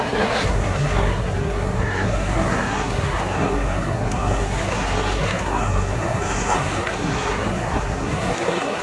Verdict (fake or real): fake